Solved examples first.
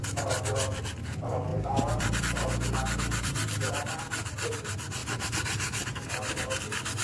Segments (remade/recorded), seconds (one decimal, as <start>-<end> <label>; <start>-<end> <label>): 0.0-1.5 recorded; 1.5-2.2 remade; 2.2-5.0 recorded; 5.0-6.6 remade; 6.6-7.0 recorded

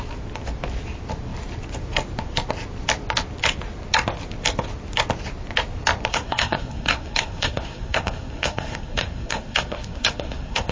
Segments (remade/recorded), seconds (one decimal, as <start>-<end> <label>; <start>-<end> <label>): 0.0-6.1 recorded; 6.1-10.7 remade

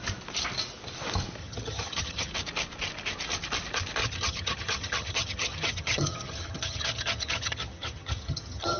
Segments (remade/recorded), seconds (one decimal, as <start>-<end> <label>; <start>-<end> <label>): 0.0-1.4 recorded; 1.4-2.3 remade; 2.3-4.0 recorded; 4.0-8.8 remade